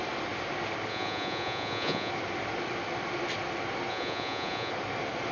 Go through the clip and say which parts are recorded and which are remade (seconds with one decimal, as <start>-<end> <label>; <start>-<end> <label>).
0.0-0.9 recorded; 0.9-2.1 remade; 2.1-3.9 recorded; 3.9-4.7 remade; 4.7-5.3 recorded